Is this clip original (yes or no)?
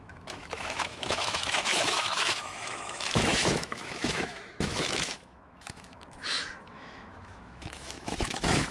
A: no